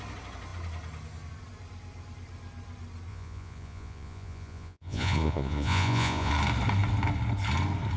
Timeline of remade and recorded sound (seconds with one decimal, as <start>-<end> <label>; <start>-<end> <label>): 0.0-3.1 recorded; 3.1-6.3 remade; 6.3-8.0 recorded